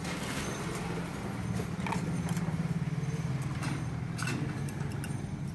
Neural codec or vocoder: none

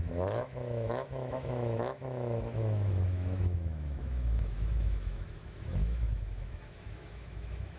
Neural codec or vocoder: autoencoder, DAC-VAE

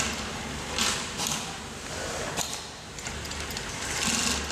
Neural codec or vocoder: none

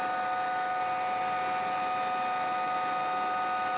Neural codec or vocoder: none